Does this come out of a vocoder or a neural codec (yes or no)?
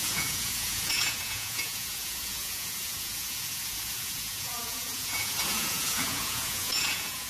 yes